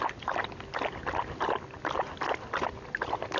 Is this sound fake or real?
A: real